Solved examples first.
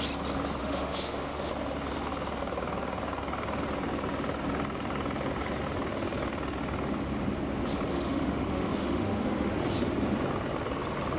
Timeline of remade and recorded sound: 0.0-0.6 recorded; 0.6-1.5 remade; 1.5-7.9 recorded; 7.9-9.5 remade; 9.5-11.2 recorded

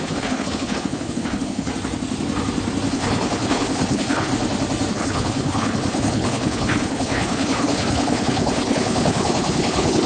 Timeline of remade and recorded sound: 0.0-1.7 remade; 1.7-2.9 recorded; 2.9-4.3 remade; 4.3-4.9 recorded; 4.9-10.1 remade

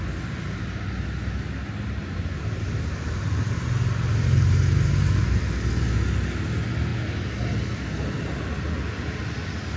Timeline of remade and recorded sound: 0.0-9.8 recorded